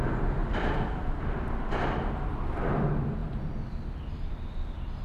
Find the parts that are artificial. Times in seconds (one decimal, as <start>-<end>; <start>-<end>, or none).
0.4-2.4